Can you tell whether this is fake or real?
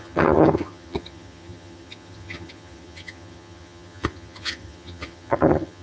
fake